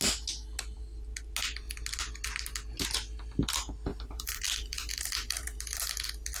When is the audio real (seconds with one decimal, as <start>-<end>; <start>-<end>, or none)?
0.0-3.9; 5.8-6.4